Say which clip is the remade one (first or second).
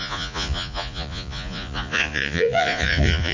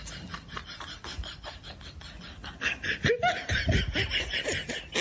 first